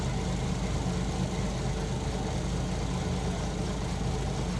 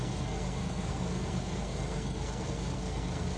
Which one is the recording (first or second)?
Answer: first